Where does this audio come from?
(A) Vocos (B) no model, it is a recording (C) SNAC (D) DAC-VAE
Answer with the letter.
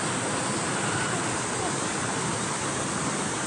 B